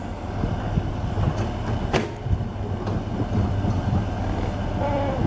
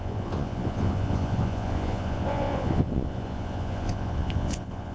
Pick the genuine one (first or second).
first